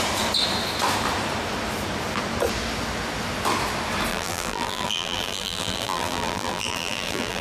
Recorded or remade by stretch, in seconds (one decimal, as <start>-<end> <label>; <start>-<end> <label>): 0.0-4.1 recorded; 4.1-7.4 remade